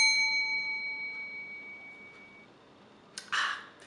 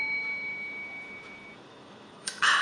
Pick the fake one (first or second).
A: second